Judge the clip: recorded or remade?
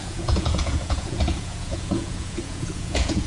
remade